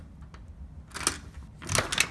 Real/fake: real